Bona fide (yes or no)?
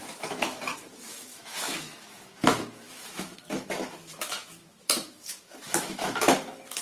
no